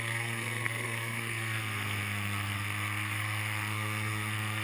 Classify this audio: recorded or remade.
remade